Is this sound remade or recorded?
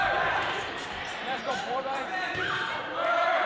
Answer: remade